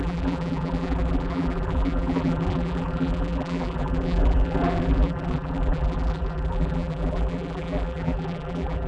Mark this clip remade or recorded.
remade